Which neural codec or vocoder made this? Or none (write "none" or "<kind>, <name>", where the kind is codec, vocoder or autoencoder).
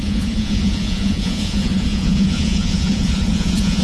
vocoder, Vocos